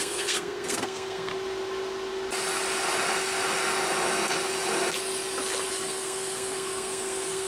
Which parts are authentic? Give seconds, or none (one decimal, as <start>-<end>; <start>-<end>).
1.3-5.7